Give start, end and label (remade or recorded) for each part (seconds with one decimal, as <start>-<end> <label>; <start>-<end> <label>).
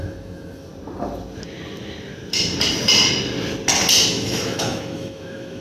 0.0-0.7 remade; 0.7-4.1 recorded; 4.1-5.6 remade